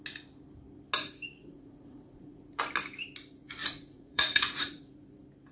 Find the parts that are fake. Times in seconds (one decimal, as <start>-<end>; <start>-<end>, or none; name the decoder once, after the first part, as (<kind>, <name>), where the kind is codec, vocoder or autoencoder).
1.4-2.6 (vocoder, Vocos); 3.6-4.8